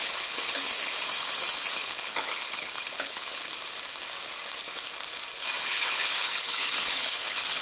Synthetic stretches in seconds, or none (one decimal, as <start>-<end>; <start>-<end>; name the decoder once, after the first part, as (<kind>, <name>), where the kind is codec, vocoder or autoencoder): 0.0-3.5 (codec, HILCodec); 5.6-7.6